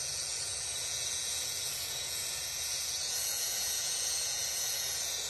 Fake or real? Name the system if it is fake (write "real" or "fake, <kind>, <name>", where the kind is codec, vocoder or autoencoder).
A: fake, vocoder, Vocos